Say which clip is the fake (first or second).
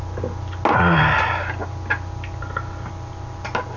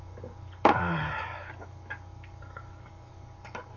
second